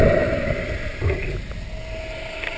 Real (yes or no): yes